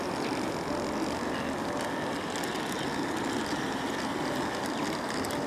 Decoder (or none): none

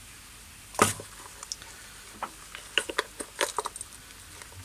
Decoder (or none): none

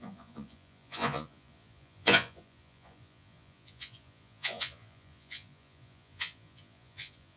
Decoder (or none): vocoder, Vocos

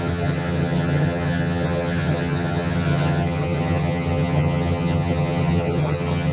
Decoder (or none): vocoder, HiFi-GAN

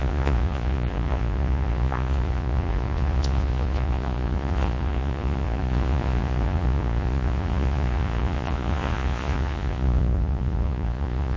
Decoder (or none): vocoder, Vocos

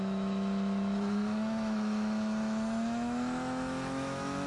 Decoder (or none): autoencoder, DAC-VAE